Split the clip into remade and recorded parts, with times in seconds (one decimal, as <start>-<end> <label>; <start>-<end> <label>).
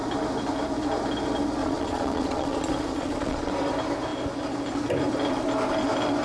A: 0.0-1.6 recorded; 1.6-3.5 remade; 3.5-6.2 recorded